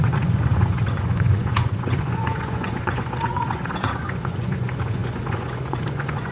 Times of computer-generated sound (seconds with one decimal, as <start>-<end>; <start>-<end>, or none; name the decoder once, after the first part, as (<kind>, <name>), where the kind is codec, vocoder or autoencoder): 0.0-6.3 (vocoder, Vocos)